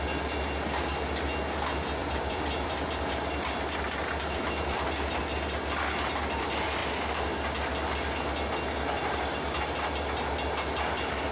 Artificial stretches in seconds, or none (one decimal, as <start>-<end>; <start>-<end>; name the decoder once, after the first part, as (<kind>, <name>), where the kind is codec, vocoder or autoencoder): 2.0-5.2 (vocoder, BigVGAN v2)